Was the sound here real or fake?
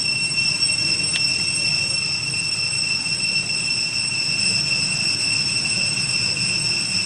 real